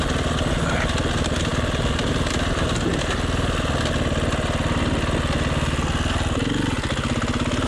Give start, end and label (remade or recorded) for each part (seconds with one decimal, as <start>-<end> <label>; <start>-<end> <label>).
0.0-7.7 recorded